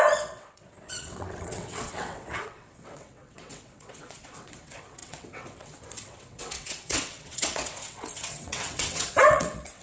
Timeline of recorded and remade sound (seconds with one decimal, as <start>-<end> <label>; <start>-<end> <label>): 0.0-9.8 remade

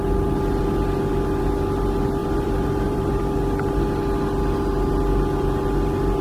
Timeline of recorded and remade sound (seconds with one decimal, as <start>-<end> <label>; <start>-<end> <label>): 0.0-2.2 recorded; 2.2-3.2 remade; 3.2-6.2 recorded

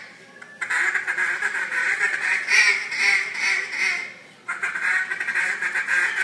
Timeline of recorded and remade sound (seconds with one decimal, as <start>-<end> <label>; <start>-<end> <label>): 0.0-1.8 recorded; 1.8-2.6 remade; 2.6-6.2 recorded

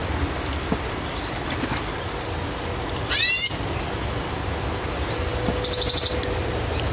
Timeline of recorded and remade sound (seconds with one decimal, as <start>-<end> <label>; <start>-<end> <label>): 0.0-6.9 recorded

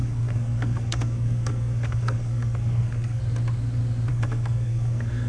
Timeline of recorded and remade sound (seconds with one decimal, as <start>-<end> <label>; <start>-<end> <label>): 0.0-3.2 remade; 3.2-4.1 recorded; 4.1-5.3 remade

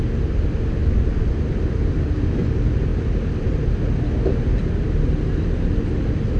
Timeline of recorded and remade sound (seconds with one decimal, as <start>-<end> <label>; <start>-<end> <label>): 0.0-6.4 recorded